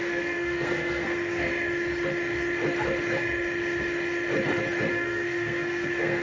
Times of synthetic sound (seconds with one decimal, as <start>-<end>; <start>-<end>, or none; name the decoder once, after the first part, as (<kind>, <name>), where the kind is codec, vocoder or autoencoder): 0.0-1.5 (codec, SNAC); 4.9-6.2